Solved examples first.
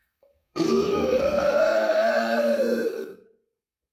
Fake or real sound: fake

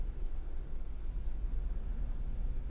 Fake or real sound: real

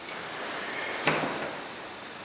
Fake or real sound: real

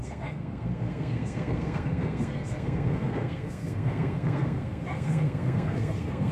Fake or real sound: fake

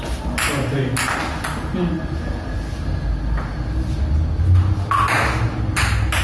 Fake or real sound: real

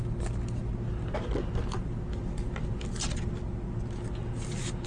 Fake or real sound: real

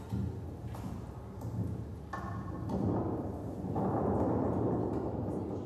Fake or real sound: real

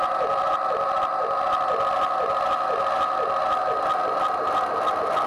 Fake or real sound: real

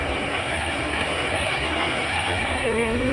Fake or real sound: fake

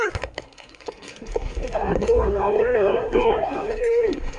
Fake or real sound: fake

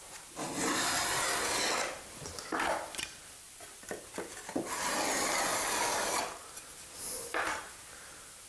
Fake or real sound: real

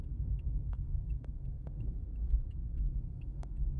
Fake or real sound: fake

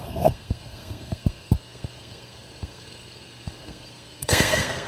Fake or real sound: fake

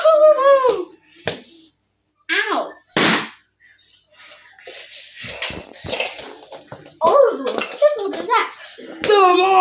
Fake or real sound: real